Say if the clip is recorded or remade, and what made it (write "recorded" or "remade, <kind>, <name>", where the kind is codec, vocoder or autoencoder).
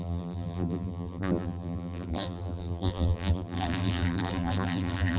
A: remade, vocoder, BigVGAN v2